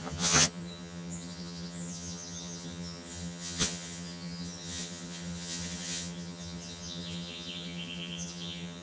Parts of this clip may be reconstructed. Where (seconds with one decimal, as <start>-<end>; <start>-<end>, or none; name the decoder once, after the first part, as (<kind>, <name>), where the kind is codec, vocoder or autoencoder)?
0.0-8.8 (vocoder, HiFi-GAN)